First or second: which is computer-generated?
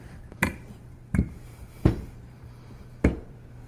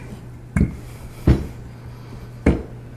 first